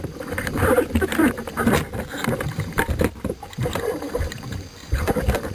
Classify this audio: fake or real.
fake